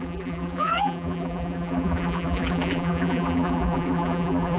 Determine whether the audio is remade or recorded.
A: remade